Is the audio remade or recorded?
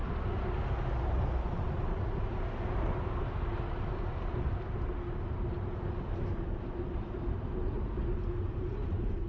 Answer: recorded